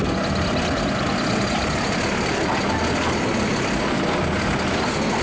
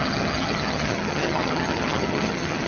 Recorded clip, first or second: first